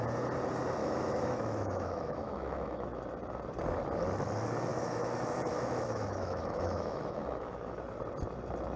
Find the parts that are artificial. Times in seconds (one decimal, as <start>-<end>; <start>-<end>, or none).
0.8-3.0; 4.7-7.8